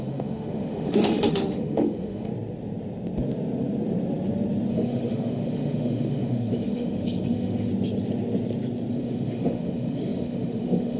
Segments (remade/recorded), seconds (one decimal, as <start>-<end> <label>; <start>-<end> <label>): 0.0-2.3 remade; 2.3-4.7 recorded; 4.7-7.7 remade; 7.7-8.9 recorded; 8.9-11.0 remade